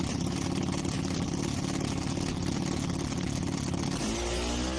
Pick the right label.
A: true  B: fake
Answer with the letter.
A